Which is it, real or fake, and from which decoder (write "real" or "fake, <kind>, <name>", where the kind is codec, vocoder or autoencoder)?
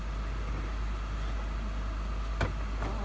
real